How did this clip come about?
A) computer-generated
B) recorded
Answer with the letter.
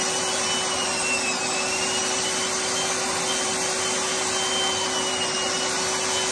B